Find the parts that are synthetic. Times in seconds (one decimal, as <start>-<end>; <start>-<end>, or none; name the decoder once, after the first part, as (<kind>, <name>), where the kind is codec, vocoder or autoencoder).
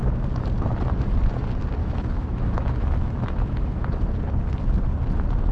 1.8-3.8 (autoencoder, DAC-VAE)